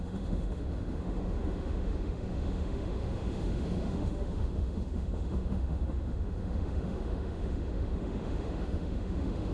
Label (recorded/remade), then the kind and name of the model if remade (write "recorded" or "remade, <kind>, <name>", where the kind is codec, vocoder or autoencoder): remade, autoencoder, DAC-VAE